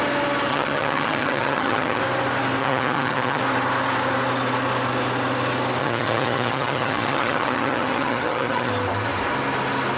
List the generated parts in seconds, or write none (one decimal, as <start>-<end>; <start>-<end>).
0.5-2.0; 2.6-3.4; 5.8-8.7